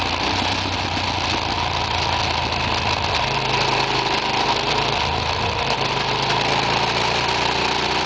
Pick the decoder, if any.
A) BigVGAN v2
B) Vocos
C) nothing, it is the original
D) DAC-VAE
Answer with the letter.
C